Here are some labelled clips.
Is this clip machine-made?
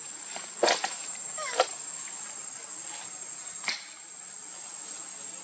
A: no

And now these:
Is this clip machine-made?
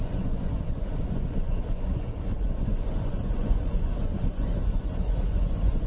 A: yes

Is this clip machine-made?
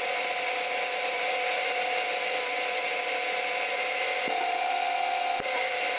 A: no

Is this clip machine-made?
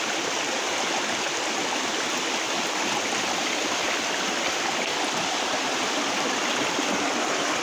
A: no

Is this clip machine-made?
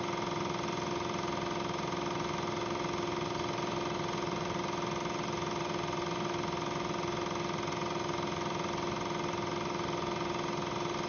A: no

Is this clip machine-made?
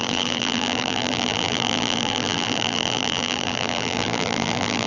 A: yes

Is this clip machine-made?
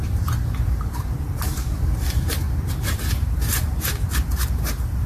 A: yes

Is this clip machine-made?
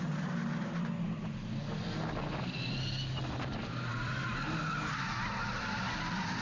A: no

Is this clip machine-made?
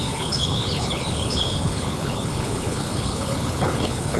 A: yes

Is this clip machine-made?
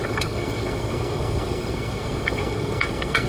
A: yes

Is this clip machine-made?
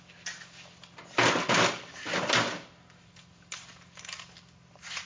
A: no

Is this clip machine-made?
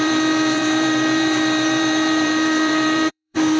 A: yes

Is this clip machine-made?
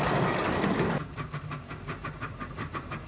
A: no